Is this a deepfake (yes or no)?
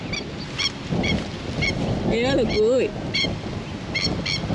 no